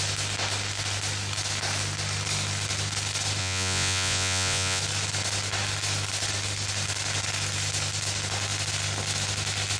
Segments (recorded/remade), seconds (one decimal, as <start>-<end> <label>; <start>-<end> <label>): 0.0-3.4 recorded; 3.4-4.8 remade; 4.8-9.8 recorded